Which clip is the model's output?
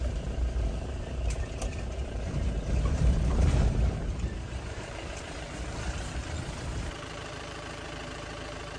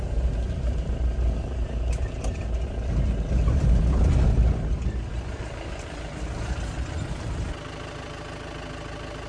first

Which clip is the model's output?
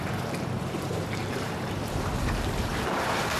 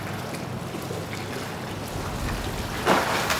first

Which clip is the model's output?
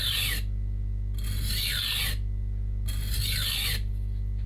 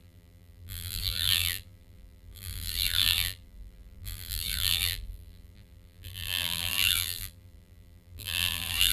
second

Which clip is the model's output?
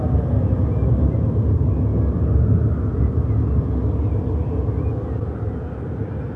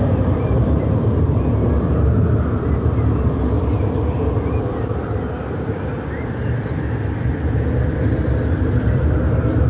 second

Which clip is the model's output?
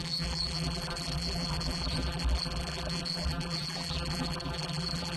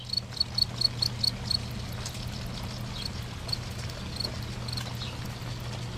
first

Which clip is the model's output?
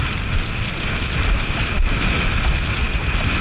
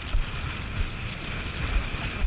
second